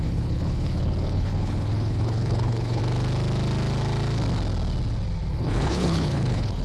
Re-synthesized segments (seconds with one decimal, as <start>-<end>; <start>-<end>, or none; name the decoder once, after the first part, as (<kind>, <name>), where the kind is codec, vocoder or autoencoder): 0.0-2.8 (codec, HILCodec); 5.3-6.6